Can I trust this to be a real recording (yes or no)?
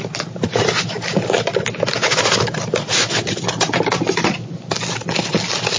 yes